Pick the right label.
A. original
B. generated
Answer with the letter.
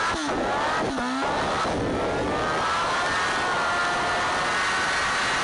A